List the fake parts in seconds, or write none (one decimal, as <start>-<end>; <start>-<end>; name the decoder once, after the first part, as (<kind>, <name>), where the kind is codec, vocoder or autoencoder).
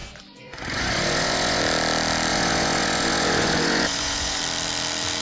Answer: 0.0-1.6 (vocoder, Vocos); 2.3-4.4